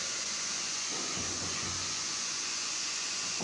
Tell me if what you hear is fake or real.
fake